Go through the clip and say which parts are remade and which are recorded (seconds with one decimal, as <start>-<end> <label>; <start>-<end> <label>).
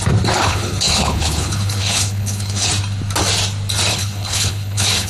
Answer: 0.0-0.4 recorded; 0.4-2.7 remade; 2.7-3.9 recorded; 3.9-5.1 remade